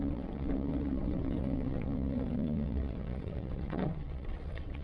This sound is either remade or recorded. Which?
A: remade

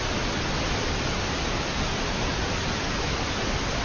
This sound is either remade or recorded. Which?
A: recorded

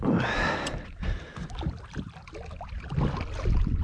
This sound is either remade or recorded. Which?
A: recorded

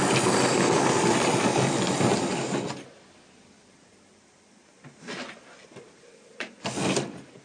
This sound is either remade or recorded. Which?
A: recorded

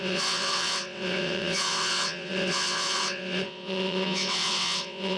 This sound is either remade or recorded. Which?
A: remade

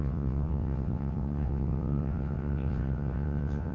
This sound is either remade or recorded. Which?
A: remade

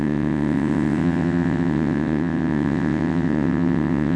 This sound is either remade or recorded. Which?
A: remade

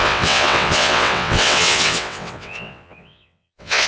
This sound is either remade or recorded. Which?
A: remade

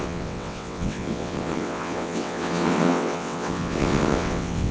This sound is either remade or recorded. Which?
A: remade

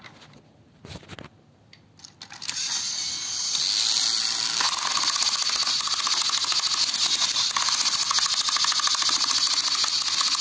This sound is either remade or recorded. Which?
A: recorded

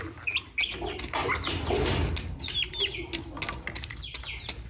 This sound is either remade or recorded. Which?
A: recorded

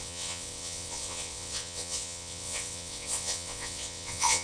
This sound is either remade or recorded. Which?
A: remade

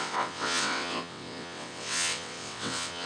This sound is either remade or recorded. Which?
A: remade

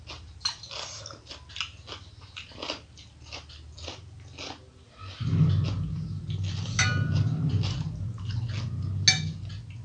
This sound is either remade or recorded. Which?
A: recorded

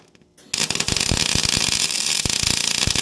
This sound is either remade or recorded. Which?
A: recorded